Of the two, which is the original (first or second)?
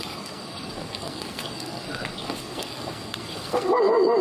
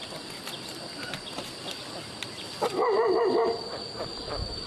second